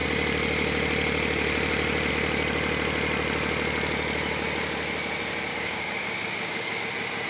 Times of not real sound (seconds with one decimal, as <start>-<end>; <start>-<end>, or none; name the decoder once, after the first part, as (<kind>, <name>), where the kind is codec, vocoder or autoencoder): 5.5-6.8 (codec, DAC)